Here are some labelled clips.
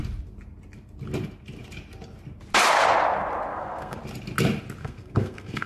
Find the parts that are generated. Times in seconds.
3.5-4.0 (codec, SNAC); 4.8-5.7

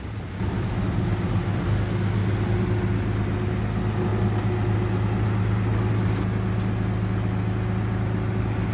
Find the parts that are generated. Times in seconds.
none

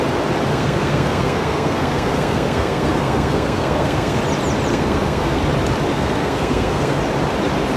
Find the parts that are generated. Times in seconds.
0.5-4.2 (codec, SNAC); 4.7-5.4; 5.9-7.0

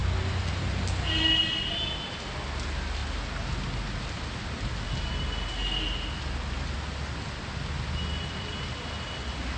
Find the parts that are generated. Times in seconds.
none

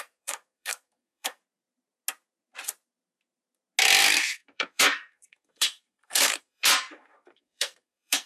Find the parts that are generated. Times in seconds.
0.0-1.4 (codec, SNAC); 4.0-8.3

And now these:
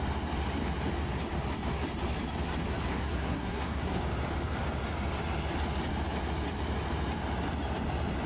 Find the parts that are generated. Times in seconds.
2.9-4.0 (codec, SNAC)